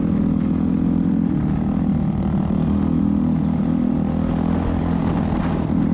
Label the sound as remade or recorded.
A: recorded